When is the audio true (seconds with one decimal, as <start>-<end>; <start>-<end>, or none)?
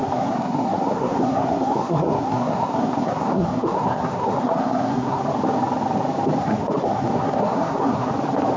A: 5.2-6.4; 8.1-8.6